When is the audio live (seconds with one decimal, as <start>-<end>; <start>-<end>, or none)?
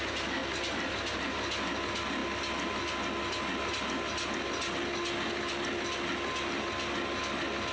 0.0-7.7